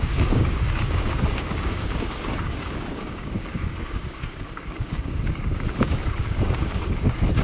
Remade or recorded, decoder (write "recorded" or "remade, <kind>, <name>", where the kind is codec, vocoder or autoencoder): remade, codec, DAC